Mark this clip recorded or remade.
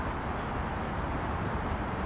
recorded